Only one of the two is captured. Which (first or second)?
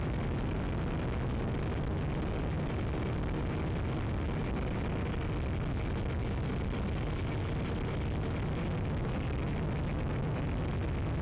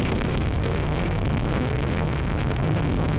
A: first